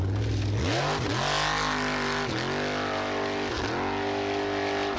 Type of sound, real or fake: real